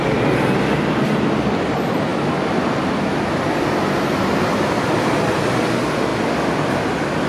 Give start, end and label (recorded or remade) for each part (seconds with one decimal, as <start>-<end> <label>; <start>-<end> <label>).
0.0-7.3 recorded